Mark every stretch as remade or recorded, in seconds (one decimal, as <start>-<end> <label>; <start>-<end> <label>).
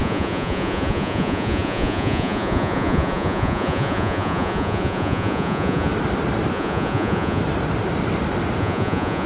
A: 0.0-5.9 remade; 5.9-6.5 recorded; 6.5-7.4 remade; 7.4-8.6 recorded; 8.6-9.3 remade